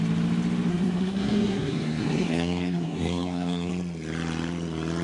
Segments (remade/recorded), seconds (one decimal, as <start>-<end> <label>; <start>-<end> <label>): 0.0-0.7 recorded; 0.7-3.7 remade; 3.7-5.0 recorded